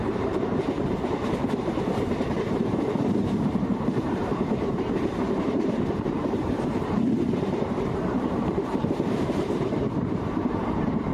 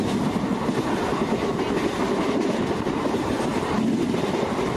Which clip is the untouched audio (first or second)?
second